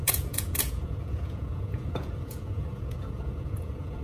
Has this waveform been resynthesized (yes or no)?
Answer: yes